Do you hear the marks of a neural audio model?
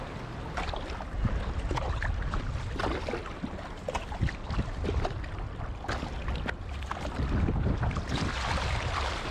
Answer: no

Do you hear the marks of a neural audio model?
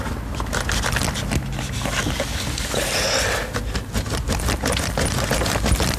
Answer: no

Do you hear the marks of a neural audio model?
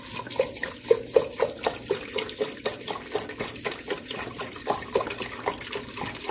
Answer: no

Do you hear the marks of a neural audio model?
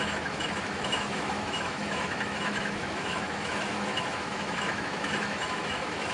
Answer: yes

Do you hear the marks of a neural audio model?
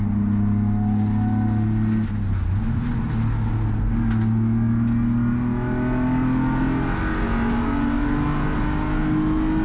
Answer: no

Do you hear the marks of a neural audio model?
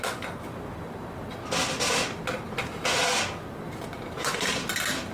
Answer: no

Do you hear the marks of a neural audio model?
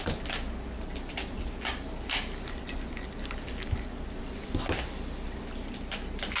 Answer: no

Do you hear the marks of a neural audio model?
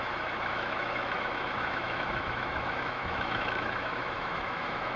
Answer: yes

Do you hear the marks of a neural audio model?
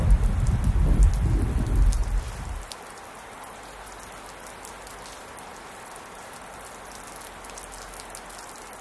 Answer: no